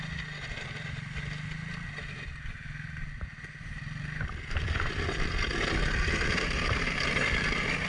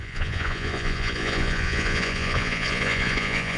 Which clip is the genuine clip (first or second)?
first